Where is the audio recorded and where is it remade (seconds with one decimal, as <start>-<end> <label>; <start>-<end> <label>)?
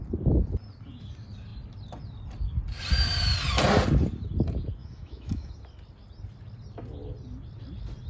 0.0-4.8 recorded; 4.8-5.5 remade; 5.5-8.1 recorded